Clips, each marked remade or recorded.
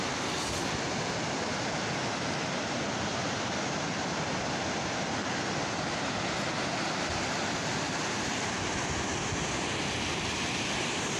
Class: recorded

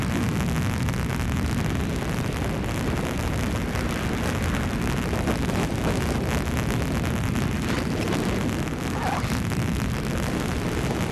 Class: recorded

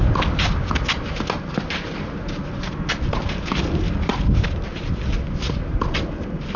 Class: recorded